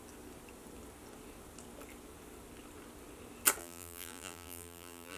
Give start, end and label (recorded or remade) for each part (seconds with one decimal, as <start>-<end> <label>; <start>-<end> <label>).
0.0-3.6 recorded; 3.6-5.2 remade